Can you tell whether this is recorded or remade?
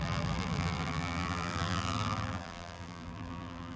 remade